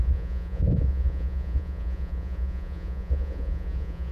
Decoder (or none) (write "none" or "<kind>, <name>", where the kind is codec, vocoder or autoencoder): vocoder, Vocos